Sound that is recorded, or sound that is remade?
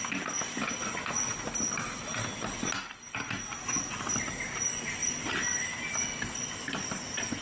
recorded